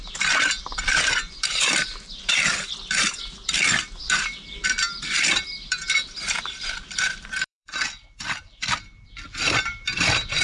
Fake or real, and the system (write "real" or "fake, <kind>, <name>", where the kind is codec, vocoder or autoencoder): fake, vocoder, BigVGAN v2